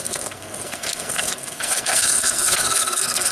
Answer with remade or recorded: remade